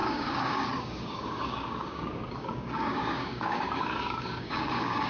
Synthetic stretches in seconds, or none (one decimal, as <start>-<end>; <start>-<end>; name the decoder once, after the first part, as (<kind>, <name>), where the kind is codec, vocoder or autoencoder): 0.0-5.1 (codec, DAC)